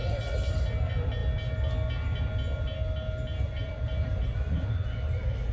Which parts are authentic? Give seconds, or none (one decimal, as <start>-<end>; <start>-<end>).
0.5-3.6